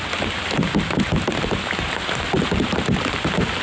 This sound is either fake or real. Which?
real